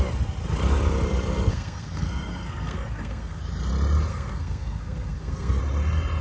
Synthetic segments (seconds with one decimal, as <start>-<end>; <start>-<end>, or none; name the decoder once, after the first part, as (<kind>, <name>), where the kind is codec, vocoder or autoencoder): 1.5-3.4 (codec, SNAC); 4.1-5.6